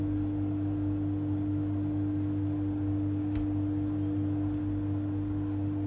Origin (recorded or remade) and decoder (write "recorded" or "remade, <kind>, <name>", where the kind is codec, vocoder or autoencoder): recorded